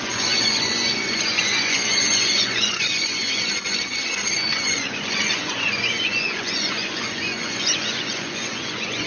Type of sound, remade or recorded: remade